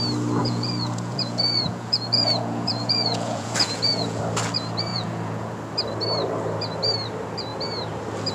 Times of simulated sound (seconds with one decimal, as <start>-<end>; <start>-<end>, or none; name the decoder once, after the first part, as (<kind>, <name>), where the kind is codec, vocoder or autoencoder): 0.4-4.2 (vocoder, Vocos); 4.9-5.5